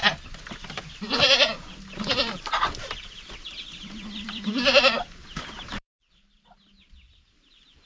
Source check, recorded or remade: remade